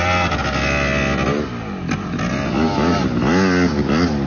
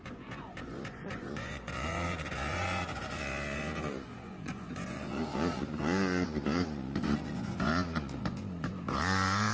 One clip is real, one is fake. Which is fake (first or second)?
second